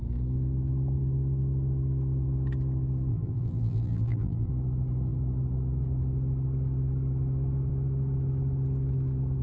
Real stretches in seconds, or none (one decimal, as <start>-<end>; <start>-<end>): 0.0-3.1; 4.5-9.4